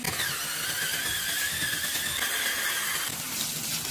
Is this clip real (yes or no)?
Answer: yes